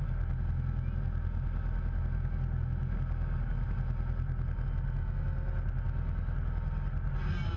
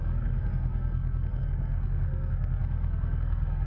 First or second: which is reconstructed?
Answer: second